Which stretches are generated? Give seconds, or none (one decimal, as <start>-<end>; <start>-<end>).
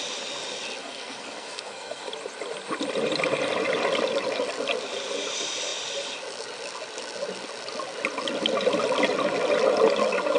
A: 0.8-2.1